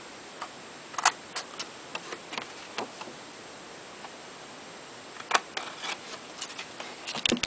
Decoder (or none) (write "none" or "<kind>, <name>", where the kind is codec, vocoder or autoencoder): none